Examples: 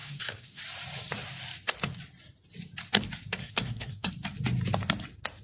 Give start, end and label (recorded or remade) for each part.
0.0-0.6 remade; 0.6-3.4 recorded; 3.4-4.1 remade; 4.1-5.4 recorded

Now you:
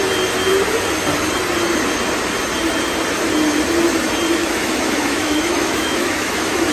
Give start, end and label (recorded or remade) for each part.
0.0-4.4 recorded; 4.4-6.7 remade

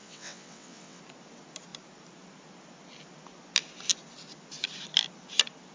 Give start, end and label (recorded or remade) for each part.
0.0-1.0 remade; 1.0-5.7 recorded